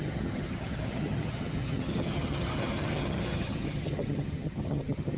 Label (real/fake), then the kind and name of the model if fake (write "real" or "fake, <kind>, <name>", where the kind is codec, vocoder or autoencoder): fake, vocoder, HiFi-GAN